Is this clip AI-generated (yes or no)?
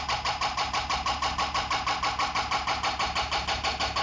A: no